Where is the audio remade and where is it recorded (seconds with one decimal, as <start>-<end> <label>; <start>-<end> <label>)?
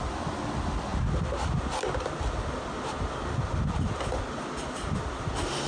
0.0-5.7 recorded